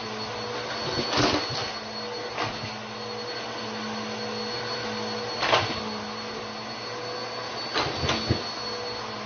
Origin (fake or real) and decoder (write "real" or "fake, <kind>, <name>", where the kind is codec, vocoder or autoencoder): real